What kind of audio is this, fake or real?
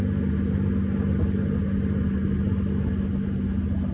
real